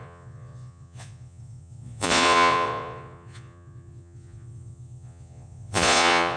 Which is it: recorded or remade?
remade